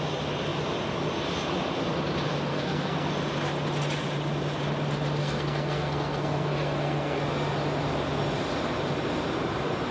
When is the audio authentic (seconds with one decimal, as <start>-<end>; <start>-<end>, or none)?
0.0-2.5; 3.1-5.2; 7.2-9.9